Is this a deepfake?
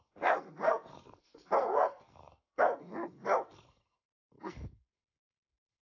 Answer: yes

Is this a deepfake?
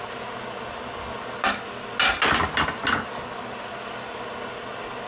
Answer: no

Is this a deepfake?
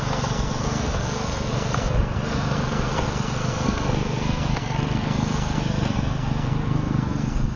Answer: yes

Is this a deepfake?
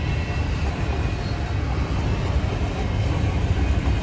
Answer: no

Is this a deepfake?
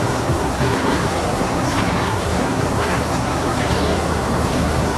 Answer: yes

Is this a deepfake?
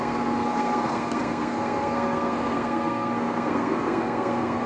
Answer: yes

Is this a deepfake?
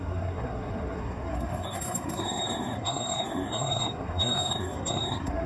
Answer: yes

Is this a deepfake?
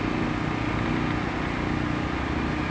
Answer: no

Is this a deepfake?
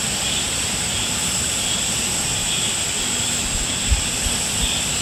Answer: no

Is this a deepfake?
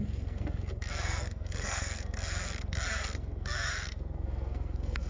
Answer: yes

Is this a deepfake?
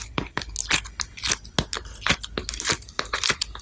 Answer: no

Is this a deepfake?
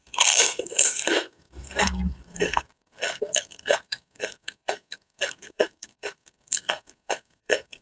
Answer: yes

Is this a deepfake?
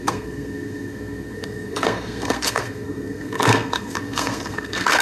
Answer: yes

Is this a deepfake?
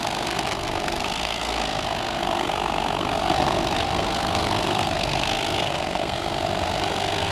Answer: yes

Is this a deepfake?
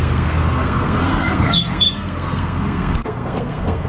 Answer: yes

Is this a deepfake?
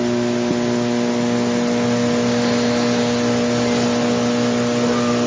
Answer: no